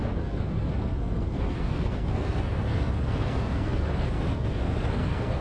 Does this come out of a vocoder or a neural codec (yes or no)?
yes